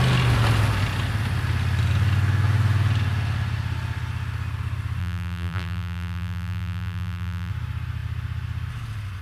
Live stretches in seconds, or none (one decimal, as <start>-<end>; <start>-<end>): 0.0-5.0; 7.5-9.2